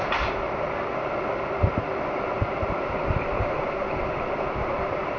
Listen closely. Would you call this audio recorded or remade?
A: recorded